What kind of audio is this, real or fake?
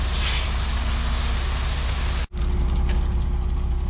real